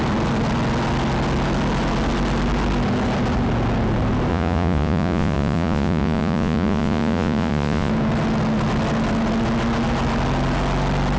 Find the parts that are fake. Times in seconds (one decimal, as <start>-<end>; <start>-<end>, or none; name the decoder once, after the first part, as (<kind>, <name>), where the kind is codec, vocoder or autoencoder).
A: 4.3-7.9 (vocoder, Vocos)

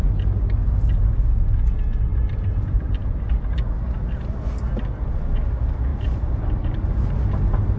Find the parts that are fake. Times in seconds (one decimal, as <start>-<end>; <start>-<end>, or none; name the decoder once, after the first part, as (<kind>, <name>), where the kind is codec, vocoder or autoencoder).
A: 2.1-3.2 (vocoder, BigVGAN v2); 5.9-7.1

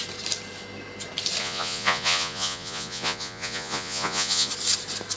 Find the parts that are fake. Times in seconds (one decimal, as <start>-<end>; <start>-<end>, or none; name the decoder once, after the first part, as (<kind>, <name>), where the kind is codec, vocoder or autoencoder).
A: 1.4-4.5 (vocoder, Vocos)

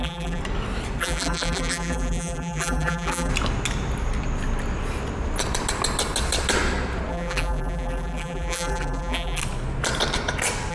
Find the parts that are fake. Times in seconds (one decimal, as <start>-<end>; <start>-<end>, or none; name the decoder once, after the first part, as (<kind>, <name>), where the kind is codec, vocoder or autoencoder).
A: 0.0-0.4 (vocoder, BigVGAN v2); 1.0-3.3; 7.1-9.4

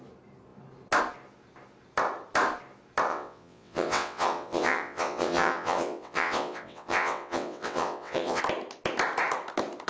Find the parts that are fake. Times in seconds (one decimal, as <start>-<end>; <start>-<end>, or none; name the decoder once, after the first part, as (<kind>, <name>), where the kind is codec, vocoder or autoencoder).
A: 3.1-8.4 (vocoder, WaveNeXt)